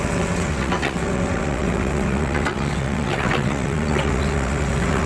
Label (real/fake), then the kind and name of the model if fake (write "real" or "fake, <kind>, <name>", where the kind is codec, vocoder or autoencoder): fake, vocoder, WaveNeXt